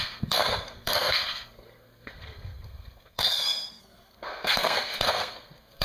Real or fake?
fake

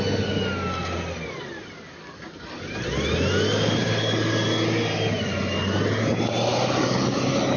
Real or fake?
real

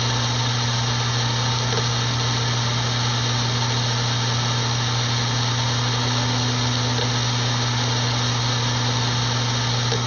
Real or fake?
real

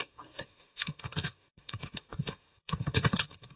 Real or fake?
fake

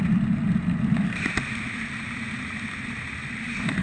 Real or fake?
real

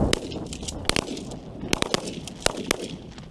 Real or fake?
real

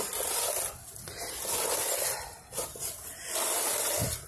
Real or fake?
real